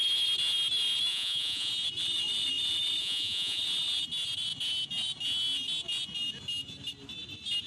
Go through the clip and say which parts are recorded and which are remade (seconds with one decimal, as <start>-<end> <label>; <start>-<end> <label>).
0.0-1.1 recorded; 1.1-1.7 remade; 1.7-3.0 recorded; 3.0-3.6 remade; 3.6-7.7 recorded